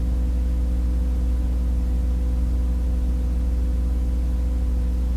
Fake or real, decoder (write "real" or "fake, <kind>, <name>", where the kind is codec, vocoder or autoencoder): real